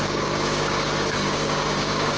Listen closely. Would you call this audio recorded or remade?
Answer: remade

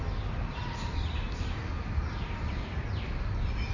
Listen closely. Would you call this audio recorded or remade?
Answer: recorded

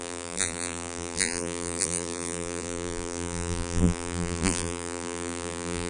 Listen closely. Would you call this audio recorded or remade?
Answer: remade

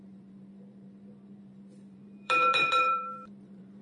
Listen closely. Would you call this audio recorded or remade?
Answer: remade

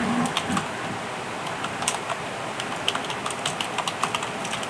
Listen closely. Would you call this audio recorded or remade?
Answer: recorded